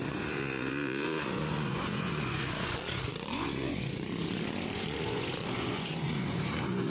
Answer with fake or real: fake